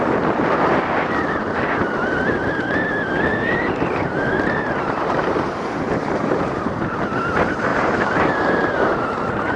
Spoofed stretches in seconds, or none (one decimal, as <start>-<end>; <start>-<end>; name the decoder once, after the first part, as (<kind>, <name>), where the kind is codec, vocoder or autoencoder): 3.3-6.5 (vocoder, BigVGAN v2); 7.7-9.2